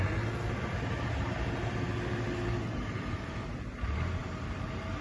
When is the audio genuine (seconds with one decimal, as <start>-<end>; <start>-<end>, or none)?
0.0-5.0

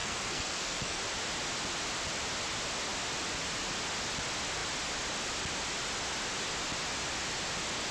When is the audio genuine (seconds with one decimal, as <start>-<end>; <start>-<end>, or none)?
1.0-7.9

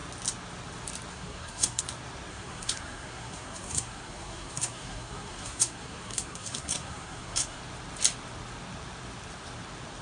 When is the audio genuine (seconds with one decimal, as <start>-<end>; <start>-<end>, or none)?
0.0-1.1; 1.8-2.3; 7.6-10.0

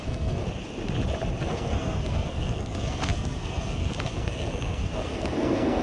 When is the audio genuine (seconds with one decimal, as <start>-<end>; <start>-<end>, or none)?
0.4-1.4

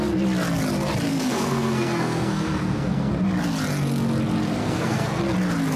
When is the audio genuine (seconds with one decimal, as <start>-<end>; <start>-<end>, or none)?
0.0-1.1; 3.1-4.6; 5.2-5.8